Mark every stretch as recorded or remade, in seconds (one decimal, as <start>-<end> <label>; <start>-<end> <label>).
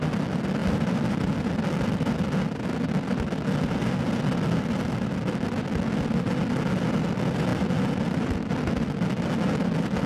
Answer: 0.0-10.1 recorded